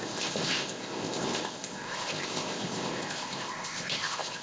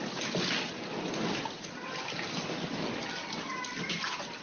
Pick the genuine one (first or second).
second